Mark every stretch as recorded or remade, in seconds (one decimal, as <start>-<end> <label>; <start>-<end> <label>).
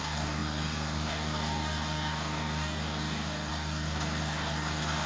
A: 0.0-5.1 remade